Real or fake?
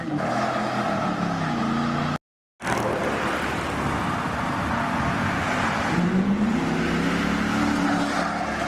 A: real